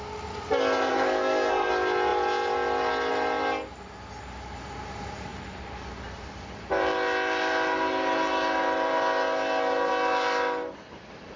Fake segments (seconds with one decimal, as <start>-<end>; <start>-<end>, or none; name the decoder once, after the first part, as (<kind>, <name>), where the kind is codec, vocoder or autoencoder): 0.9-1.7 (codec, SNAC)